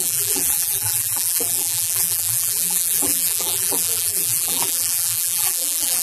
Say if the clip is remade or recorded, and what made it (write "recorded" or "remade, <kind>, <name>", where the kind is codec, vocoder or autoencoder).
remade, vocoder, BigVGAN v2